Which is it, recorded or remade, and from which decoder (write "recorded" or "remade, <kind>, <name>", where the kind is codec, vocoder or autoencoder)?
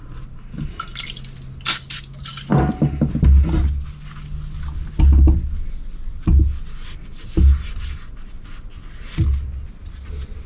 recorded